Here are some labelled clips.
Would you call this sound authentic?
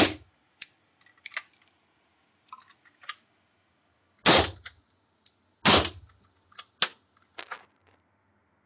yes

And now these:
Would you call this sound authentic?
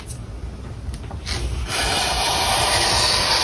yes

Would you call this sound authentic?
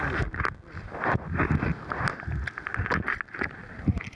yes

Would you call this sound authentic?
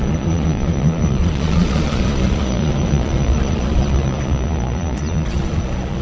no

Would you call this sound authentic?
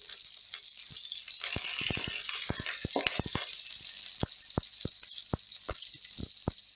yes